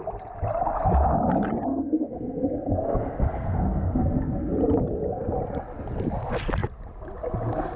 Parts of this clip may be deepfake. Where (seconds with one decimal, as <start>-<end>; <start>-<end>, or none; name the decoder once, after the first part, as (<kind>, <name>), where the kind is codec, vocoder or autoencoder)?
1.7-4.5 (codec, SNAC)